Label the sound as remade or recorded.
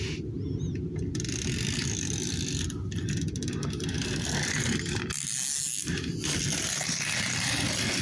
recorded